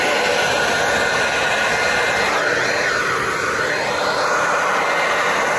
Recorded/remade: recorded